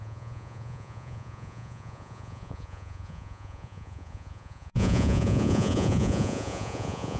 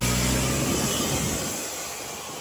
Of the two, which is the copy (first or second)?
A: first